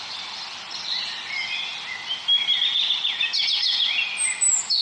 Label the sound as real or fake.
real